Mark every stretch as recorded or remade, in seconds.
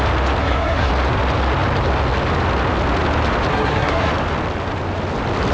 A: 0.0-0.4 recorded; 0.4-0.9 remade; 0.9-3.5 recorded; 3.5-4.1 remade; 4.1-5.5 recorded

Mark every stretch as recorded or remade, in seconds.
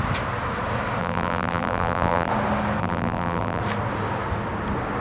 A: 0.0-1.0 recorded; 1.0-2.3 remade; 2.3-2.8 recorded; 2.8-3.6 remade; 3.6-5.0 recorded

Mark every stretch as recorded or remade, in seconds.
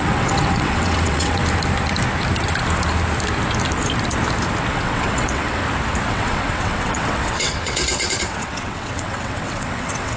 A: 0.0-1.4 remade; 1.4-4.7 recorded; 4.7-5.6 remade; 5.6-6.1 recorded; 6.1-10.2 remade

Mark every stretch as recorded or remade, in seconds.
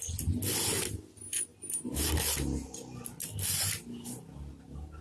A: 0.0-5.0 recorded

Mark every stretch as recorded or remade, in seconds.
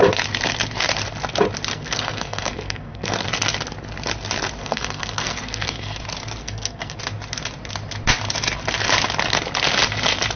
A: 0.0-1.7 recorded; 1.7-3.3 remade; 3.3-4.6 recorded; 4.6-6.0 remade; 6.0-6.4 recorded; 6.4-7.0 remade; 7.0-10.4 recorded